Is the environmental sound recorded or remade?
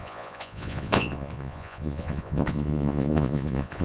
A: remade